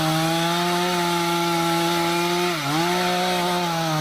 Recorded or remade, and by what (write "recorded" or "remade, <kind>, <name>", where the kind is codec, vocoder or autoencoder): recorded